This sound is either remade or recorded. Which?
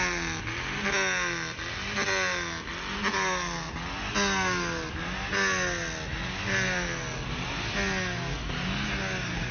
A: recorded